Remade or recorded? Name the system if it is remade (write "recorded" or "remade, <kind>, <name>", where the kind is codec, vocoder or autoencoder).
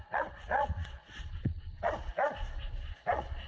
remade, vocoder, Vocos